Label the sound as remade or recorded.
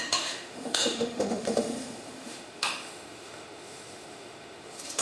remade